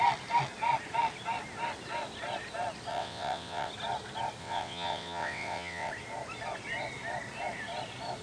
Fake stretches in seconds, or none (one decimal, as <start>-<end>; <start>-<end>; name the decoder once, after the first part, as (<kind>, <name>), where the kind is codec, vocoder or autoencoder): 2.9-3.7 (vocoder, WaveNeXt); 4.4-5.9